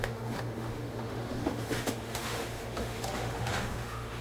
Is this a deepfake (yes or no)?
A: yes